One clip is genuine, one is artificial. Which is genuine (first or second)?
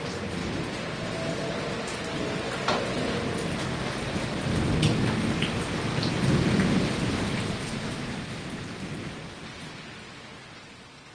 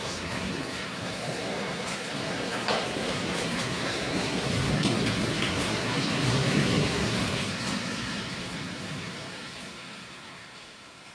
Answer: first